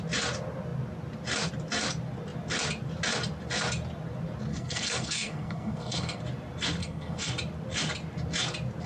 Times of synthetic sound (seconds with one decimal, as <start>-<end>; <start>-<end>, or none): 4.5-6.2; 6.8-7.3